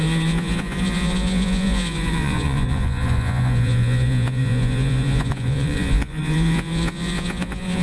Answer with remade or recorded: remade